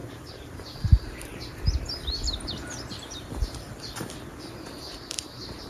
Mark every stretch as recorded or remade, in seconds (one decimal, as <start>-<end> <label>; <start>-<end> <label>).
0.0-1.3 remade; 1.3-4.7 recorded; 4.7-5.7 remade